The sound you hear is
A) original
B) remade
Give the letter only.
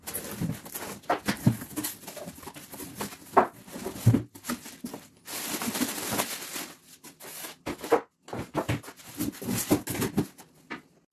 A